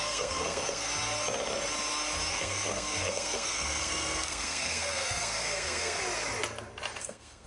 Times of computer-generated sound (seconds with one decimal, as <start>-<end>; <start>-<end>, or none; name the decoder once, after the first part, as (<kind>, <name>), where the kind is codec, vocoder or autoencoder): 0.0-0.9 (codec, SNAC); 2.3-6.0; 7.0-7.5

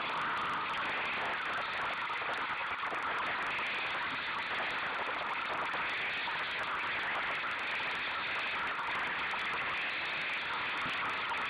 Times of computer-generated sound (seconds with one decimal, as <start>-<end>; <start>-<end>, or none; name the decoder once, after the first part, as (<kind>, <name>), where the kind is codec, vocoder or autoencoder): none

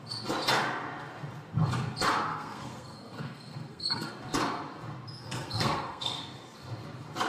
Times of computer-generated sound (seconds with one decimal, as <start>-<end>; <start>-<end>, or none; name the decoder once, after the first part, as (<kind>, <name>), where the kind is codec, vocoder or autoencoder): 2.3-4.1 (codec, SNAC); 5.2-6.2

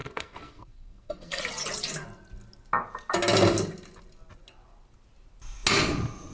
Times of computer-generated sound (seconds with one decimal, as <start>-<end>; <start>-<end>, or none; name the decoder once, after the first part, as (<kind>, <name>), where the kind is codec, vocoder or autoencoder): 0.0-1.4 (codec, SNAC)

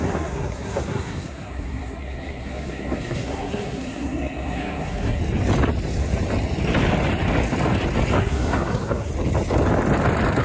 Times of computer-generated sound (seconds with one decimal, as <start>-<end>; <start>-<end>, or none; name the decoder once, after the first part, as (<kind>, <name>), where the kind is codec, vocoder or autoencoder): 0.0-5.2 (codec, SNAC); 8.2-9.1